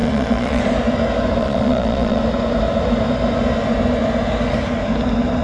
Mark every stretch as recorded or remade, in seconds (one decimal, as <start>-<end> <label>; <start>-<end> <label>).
0.0-0.6 remade; 0.6-1.4 recorded; 1.4-2.2 remade; 2.2-5.4 recorded